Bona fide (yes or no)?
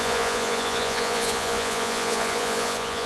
no